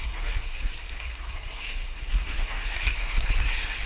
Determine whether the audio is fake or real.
fake